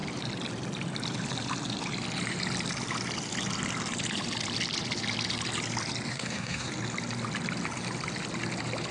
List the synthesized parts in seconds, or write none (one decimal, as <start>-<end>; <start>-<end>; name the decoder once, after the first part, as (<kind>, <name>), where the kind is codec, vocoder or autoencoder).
6.1-6.7 (codec, SNAC)